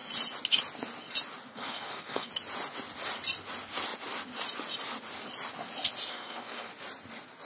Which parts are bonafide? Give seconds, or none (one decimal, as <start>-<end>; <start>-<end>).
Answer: 0.0-1.5; 2.3-6.1; 6.7-7.5